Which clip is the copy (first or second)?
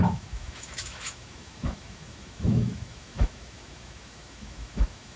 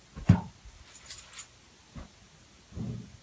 first